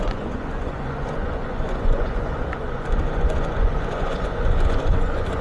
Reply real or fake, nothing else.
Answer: fake